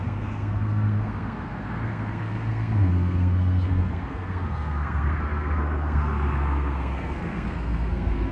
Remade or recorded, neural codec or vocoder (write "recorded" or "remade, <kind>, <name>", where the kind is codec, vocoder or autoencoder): remade, codec, SNAC